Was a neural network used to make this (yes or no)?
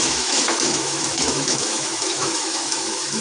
yes